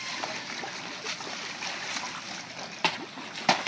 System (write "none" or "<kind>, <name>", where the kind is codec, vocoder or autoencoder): none